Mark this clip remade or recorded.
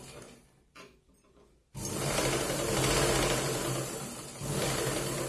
recorded